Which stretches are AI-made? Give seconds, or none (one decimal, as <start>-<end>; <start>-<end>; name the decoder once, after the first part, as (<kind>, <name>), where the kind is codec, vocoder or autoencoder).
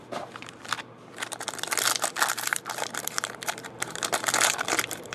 0.0-0.6 (vocoder, BigVGAN v2); 2.3-5.1